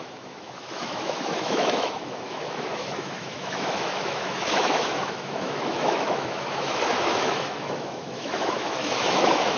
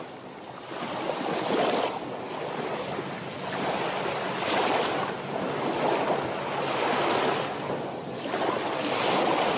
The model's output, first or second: first